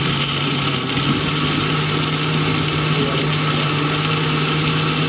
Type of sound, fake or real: real